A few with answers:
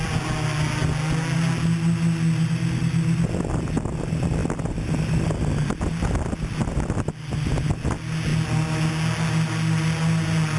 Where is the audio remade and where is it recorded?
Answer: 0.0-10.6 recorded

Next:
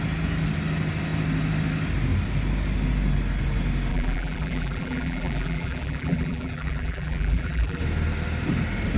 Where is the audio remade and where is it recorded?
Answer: 0.0-3.9 recorded; 3.9-7.8 remade; 7.8-9.0 recorded

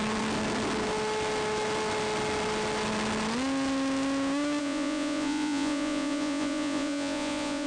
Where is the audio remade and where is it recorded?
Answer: 0.0-4.6 recorded; 4.6-7.7 remade